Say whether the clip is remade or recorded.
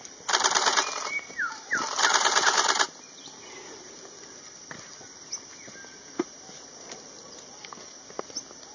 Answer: recorded